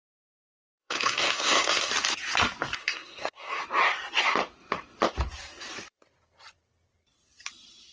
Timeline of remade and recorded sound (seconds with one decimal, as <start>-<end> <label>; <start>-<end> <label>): 0.0-0.8 recorded; 0.8-1.9 remade; 1.9-2.8 recorded; 2.8-3.6 remade; 3.6-7.9 recorded